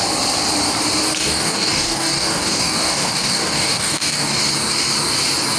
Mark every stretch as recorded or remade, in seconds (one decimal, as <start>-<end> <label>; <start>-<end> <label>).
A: 0.0-1.2 recorded; 1.2-4.4 remade; 4.4-5.6 recorded